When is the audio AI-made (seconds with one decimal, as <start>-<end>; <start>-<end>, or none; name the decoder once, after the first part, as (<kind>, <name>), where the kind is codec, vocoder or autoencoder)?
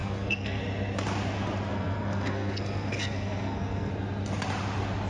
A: 0.0-0.6 (codec, SNAC); 1.7-3.9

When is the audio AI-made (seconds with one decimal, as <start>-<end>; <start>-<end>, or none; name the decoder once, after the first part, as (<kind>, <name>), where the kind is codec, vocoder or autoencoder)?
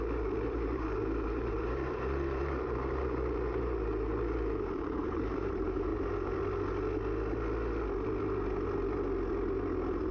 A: 0.0-5.9 (vocoder, BigVGAN v2)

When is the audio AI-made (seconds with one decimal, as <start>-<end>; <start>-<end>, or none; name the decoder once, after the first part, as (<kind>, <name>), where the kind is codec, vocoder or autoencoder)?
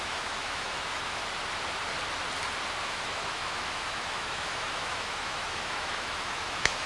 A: 0.0-1.2 (autoencoder, DAC-VAE); 2.8-6.9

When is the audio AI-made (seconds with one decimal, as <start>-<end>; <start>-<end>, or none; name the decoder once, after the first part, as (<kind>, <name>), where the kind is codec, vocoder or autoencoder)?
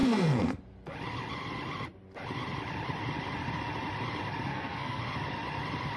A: 0.0-0.6 (codec, SNAC); 4.5-5.0